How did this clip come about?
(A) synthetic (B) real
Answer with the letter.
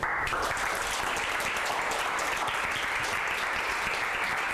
B